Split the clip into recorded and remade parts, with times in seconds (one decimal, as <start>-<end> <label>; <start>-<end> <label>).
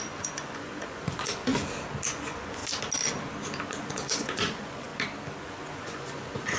0.0-1.5 remade; 1.5-2.1 recorded; 2.1-2.6 remade; 2.6-3.7 recorded; 3.7-4.9 remade; 4.9-5.4 recorded; 5.4-6.6 remade